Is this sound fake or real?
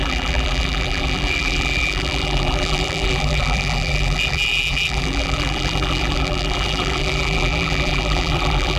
fake